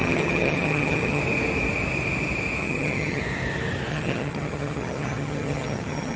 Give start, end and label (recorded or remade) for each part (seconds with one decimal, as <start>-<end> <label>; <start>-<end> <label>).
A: 0.0-1.2 remade; 1.2-2.6 recorded; 2.6-3.2 remade; 3.2-3.9 recorded; 3.9-6.2 remade